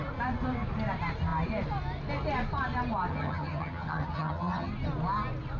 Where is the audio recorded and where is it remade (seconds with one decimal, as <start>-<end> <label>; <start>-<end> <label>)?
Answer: 0.0-3.1 recorded; 3.1-4.7 remade; 4.7-5.6 recorded